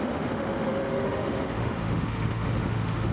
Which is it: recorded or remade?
remade